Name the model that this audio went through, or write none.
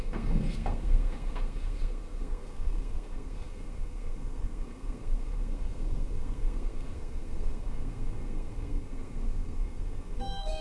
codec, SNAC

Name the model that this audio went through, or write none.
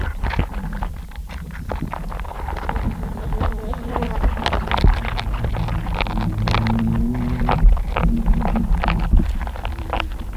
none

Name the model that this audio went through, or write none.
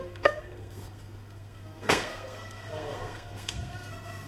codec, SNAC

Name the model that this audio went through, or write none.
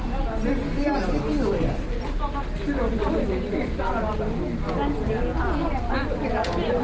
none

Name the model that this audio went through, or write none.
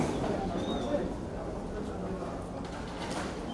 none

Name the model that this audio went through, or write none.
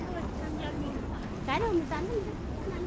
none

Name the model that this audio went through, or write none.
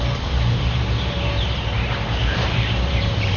vocoder, BigVGAN v2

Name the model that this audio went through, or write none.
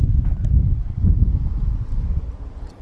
none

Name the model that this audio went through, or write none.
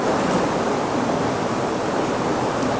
none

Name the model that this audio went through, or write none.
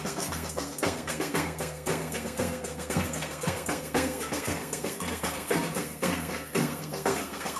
codec, SNAC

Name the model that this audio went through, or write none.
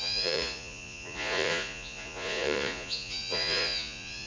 vocoder, Vocos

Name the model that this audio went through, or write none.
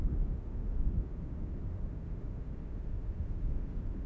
autoencoder, DAC-VAE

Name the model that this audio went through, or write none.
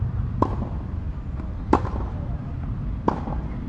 none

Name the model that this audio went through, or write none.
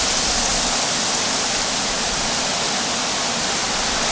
none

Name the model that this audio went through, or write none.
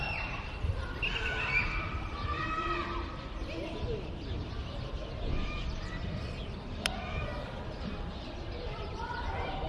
vocoder, BigVGAN v2